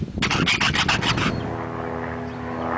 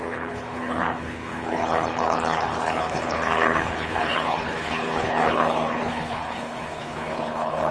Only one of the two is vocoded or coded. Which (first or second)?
second